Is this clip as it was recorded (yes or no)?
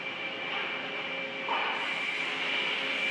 yes